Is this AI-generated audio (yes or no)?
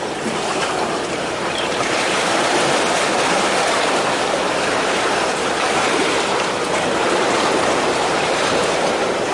yes